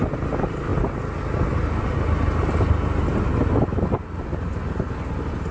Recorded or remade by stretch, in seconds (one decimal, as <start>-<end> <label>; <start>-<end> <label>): 0.0-5.5 recorded